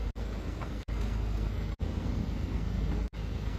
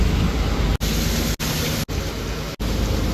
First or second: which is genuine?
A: second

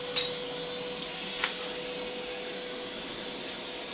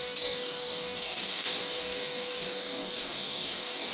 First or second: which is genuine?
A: first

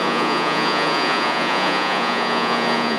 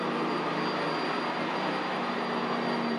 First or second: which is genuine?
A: second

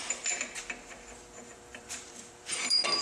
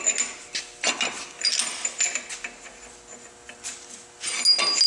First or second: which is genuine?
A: second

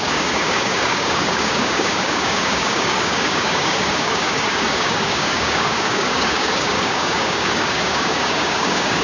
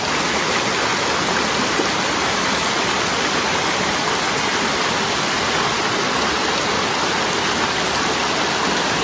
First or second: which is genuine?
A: second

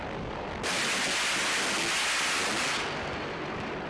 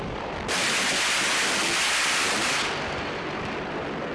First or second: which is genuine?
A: first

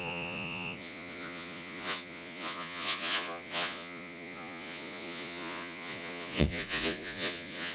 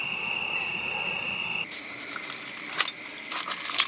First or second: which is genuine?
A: second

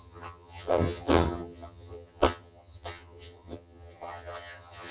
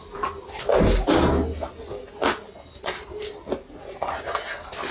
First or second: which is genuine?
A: second